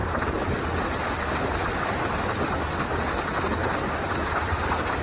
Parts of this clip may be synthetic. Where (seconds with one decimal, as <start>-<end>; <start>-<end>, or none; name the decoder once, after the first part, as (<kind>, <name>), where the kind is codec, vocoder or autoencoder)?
none